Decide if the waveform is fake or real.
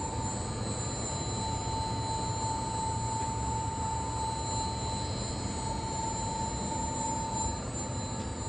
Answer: real